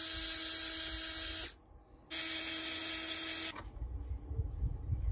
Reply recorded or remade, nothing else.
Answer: recorded